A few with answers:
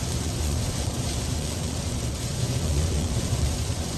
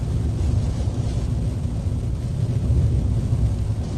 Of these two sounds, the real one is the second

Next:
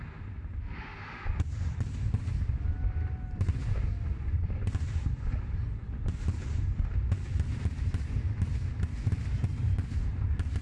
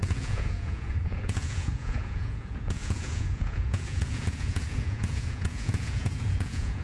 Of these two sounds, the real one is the first